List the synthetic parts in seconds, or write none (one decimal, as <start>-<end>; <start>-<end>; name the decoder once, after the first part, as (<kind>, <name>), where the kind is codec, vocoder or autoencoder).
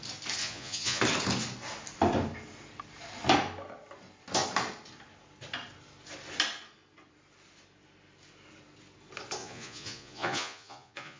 0.4-1.0 (vocoder, Vocos); 9.4-11.2